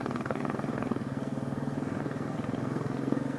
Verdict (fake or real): fake